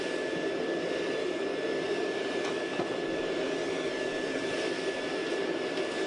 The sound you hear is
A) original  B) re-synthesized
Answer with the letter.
A